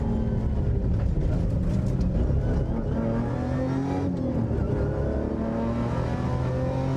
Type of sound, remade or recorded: recorded